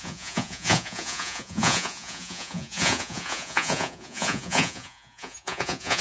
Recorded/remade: remade